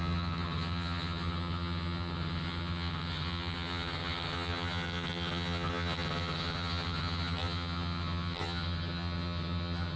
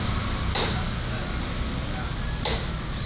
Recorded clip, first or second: second